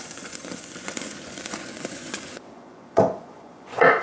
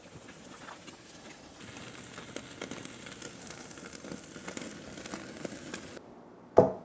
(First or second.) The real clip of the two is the second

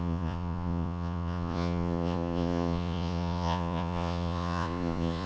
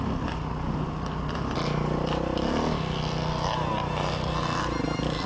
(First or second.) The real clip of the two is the second